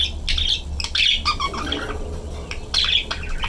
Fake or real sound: real